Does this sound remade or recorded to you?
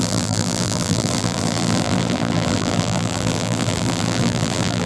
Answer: remade